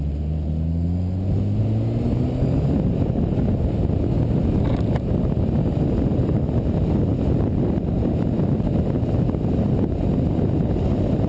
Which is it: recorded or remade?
recorded